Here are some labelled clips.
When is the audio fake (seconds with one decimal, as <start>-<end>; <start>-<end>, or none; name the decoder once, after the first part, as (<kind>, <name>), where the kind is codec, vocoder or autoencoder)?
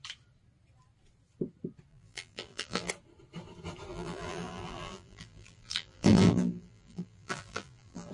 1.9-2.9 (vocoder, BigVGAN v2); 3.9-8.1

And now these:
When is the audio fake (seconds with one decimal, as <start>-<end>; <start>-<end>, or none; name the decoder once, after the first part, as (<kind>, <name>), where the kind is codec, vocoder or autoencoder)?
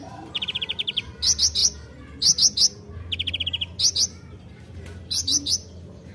0.0-1.6 (vocoder, BigVGAN v2); 4.6-6.1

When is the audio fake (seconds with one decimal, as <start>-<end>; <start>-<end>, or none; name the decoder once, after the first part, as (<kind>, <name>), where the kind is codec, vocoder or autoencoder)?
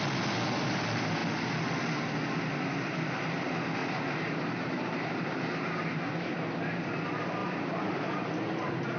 3.8-6.0 (vocoder, BigVGAN v2); 7.4-9.0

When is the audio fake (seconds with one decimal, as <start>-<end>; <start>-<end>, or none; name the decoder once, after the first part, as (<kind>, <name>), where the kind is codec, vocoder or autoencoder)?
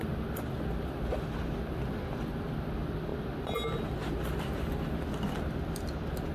none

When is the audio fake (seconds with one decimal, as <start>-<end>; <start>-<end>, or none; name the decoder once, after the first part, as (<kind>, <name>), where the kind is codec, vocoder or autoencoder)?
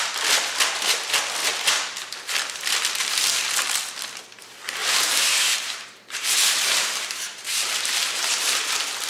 4.8-8.7 (vocoder, BigVGAN v2)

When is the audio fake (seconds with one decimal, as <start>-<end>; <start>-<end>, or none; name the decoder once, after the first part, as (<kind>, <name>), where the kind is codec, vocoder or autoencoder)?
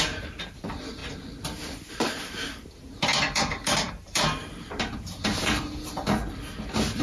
0.0-1.0 (vocoder, BigVGAN v2); 1.9-6.2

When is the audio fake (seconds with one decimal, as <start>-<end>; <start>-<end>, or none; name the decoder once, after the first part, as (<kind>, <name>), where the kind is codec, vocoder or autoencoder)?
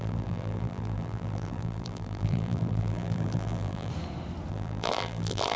0.0-3.9 (vocoder, BigVGAN v2); 4.5-5.6